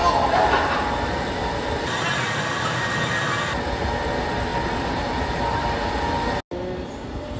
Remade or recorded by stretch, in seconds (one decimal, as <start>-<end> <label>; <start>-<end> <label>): 0.0-4.5 recorded; 4.5-5.4 remade; 5.4-7.4 recorded